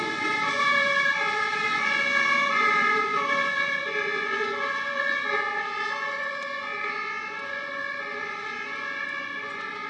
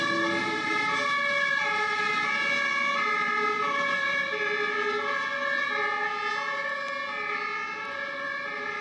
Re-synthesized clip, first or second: first